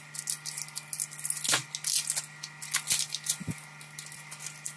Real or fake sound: real